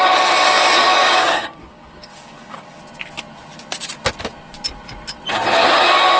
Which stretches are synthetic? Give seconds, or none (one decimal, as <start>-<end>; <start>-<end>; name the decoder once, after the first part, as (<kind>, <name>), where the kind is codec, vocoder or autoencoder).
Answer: 1.0-2.8 (codec, DAC)